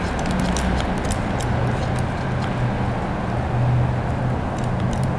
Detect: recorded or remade recorded